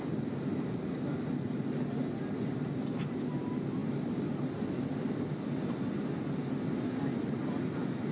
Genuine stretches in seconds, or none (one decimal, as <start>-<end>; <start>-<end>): 0.0-8.1